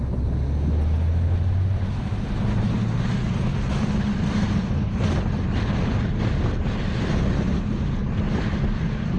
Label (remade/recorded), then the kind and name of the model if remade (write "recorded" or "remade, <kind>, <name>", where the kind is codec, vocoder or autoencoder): recorded